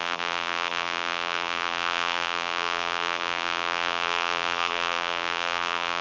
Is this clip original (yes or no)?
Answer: no